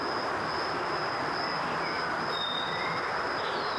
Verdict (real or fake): real